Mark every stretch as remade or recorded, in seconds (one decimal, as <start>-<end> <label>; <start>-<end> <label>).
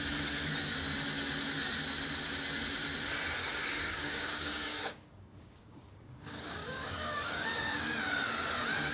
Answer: 0.0-3.4 recorded; 3.4-7.9 remade; 7.9-8.9 recorded